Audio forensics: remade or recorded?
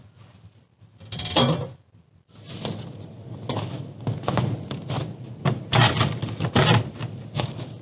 recorded